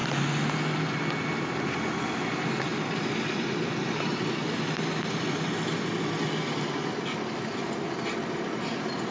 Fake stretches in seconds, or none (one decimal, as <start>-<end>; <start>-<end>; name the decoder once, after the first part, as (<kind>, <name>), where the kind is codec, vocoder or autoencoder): none